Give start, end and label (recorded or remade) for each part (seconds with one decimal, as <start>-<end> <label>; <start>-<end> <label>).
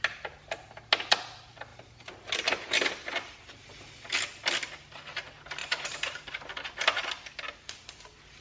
0.0-1.7 recorded; 1.7-3.9 remade; 3.9-5.6 recorded; 5.6-6.3 remade; 6.3-8.4 recorded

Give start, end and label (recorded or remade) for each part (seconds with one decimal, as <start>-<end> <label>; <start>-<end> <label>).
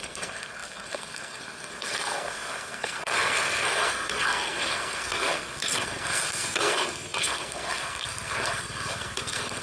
0.0-9.6 remade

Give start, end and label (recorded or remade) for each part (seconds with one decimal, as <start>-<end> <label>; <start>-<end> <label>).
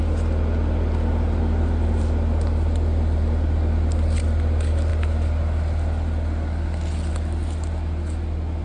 0.0-8.6 recorded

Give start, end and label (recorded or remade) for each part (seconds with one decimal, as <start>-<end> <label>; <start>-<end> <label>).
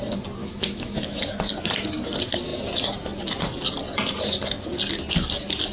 0.0-0.4 recorded; 0.4-1.2 remade; 1.2-5.7 recorded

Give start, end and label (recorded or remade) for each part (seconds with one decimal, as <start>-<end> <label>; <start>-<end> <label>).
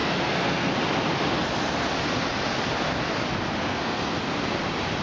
0.0-0.7 remade; 0.7-3.6 recorded; 3.6-4.3 remade; 4.3-5.0 recorded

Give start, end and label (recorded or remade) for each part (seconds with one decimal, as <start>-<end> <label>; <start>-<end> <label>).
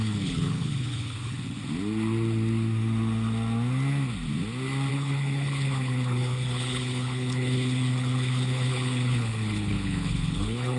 0.0-1.6 remade; 1.6-4.9 recorded; 4.9-10.8 remade